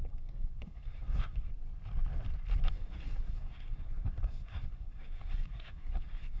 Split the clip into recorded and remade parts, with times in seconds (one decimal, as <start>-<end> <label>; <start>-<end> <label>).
0.0-1.5 remade; 1.5-2.7 recorded; 2.7-6.4 remade